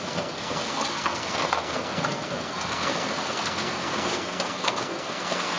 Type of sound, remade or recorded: remade